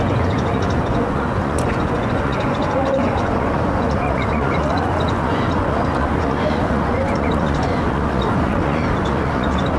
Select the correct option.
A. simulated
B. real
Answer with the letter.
A